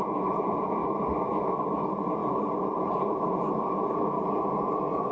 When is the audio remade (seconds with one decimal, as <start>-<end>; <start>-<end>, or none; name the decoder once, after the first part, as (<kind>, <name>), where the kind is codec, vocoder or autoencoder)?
0.0-0.8 (vocoder, Vocos); 1.8-5.1